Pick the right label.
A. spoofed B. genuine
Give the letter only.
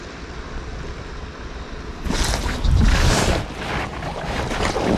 B